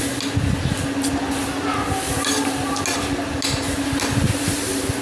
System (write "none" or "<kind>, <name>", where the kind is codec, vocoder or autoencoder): none